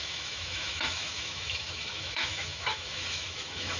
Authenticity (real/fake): fake